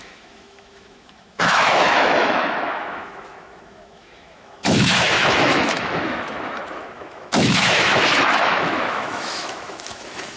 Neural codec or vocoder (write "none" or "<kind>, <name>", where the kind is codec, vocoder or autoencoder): autoencoder, DAC-VAE